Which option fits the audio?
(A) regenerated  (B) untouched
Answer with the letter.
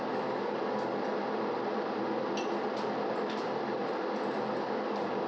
A